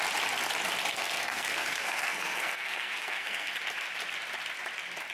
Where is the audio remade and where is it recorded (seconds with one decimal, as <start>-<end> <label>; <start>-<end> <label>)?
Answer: 0.0-0.9 recorded; 0.9-3.5 remade; 3.5-5.1 recorded